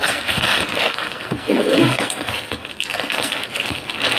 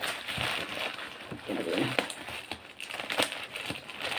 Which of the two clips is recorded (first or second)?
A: second